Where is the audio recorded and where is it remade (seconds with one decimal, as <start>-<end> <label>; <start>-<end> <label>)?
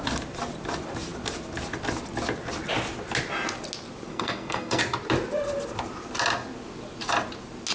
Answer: 0.0-4.1 recorded; 4.1-4.8 remade; 4.8-7.7 recorded